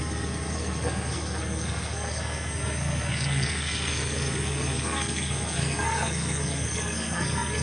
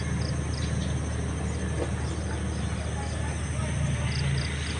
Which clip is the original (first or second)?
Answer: second